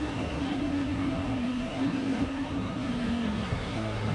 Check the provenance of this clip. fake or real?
fake